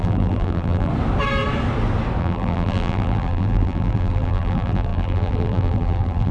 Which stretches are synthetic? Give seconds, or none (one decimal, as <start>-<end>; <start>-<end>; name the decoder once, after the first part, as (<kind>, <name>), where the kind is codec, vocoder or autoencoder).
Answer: 0.0-0.9 (vocoder, BigVGAN v2); 2.2-6.3

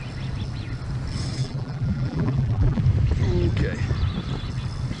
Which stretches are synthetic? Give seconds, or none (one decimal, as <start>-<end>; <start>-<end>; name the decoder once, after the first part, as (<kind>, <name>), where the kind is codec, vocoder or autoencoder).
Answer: 1.4-2.8 (vocoder, BigVGAN v2)

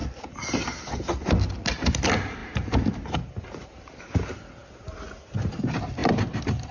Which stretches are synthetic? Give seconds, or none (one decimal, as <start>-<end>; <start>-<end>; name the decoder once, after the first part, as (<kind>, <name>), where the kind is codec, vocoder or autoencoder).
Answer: 0.0-1.3 (vocoder, BigVGAN v2); 2.4-4.0; 6.0-6.7

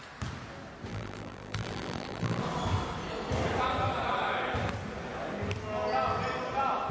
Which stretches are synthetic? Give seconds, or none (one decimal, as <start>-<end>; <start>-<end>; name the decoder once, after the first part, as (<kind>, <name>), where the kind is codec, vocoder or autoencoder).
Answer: 0.9-2.4 (vocoder, BigVGAN v2)